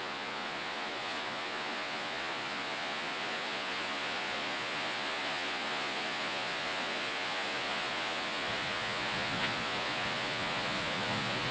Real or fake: fake